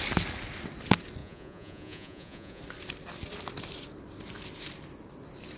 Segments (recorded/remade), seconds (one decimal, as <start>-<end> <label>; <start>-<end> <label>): 0.0-1.2 recorded; 1.2-2.6 remade; 2.6-5.6 recorded